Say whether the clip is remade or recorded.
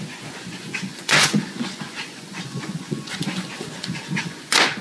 remade